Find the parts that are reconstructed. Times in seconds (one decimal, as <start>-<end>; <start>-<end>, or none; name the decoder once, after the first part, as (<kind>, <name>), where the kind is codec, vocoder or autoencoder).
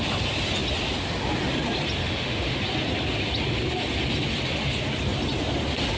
2.0-2.6 (autoencoder, DAC-VAE)